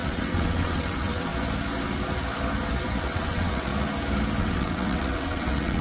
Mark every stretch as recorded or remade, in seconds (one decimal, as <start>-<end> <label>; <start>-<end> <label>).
0.0-1.3 remade; 1.3-3.0 recorded; 3.0-3.7 remade; 3.7-4.4 recorded; 4.4-5.8 remade